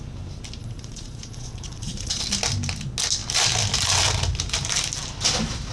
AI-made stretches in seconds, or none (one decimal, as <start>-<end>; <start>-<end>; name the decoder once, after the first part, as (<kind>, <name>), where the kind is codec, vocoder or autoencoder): 0.6-2.2 (vocoder, Vocos)